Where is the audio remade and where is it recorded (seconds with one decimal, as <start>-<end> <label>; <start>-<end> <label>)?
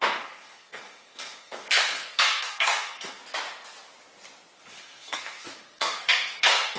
0.0-3.2 remade; 3.2-4.7 recorded; 4.7-6.8 remade